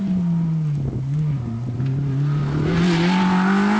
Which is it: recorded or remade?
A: recorded